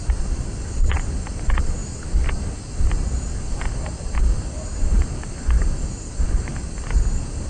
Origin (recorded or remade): recorded